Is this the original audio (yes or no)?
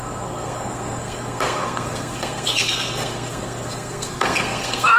no